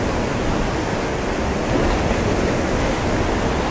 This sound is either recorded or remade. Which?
recorded